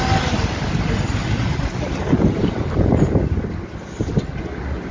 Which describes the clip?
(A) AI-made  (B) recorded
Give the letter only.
B